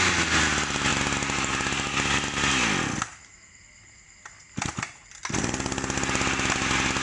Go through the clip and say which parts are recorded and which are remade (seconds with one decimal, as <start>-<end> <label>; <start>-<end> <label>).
0.0-7.0 recorded